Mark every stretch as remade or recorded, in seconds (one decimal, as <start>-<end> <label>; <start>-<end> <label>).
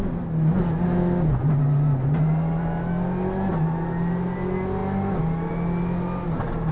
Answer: 0.0-6.7 recorded